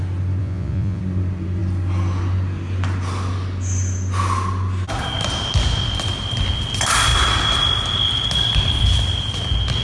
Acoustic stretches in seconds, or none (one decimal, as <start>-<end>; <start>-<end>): 0.0-0.4; 1.0-9.8